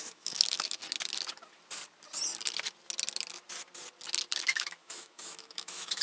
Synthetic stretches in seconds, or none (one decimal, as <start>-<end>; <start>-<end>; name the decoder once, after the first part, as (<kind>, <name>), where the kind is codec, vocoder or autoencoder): 0.0-0.8 (autoencoder, DAC-VAE); 4.4-6.0